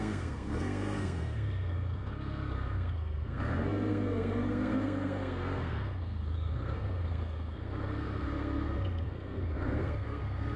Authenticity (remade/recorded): remade